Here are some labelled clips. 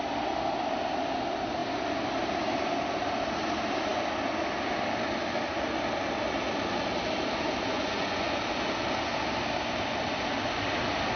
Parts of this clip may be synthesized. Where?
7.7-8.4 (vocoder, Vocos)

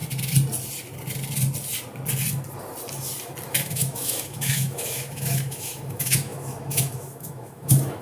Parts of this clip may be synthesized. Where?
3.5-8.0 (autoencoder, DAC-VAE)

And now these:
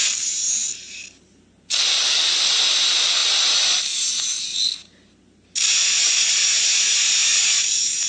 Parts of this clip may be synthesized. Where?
none